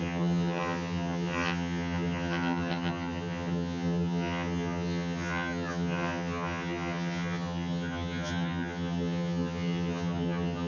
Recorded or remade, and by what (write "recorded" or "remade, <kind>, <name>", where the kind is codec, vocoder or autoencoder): remade, vocoder, HiFi-GAN